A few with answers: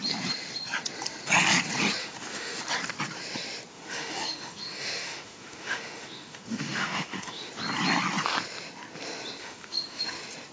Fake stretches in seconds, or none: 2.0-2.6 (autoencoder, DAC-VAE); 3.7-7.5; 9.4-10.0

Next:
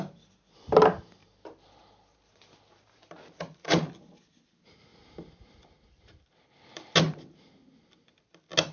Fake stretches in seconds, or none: 1.2-3.9 (vocoder, BigVGAN v2)